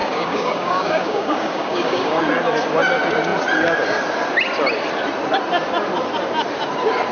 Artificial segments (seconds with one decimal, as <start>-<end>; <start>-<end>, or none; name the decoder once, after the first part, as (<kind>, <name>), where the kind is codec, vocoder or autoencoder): 0.0-2.2 (codec, DAC)

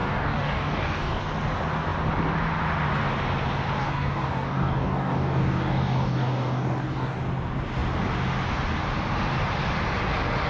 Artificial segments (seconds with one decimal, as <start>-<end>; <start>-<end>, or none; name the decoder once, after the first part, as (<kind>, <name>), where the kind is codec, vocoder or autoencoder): 0.0-1.2 (codec, DAC); 3.8-7.2

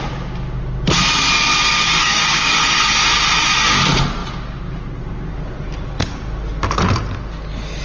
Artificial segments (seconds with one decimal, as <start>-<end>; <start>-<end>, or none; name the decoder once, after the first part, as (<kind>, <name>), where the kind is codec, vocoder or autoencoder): 2.0-2.5 (codec, DAC)

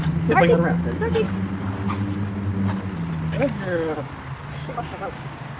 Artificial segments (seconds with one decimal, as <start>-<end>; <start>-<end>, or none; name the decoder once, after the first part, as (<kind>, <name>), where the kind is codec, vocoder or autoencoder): 4.6-5.6 (codec, DAC)

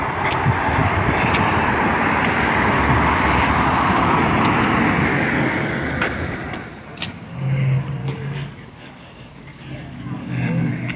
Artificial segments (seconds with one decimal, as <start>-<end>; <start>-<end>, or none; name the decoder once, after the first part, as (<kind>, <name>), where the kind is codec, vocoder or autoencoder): 5.1-5.7 (codec, DAC); 8.0-11.0

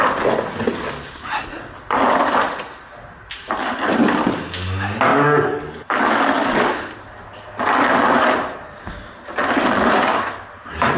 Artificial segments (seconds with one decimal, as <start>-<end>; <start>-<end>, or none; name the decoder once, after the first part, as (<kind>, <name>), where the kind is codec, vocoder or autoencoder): 5.1-6.6 (codec, DAC)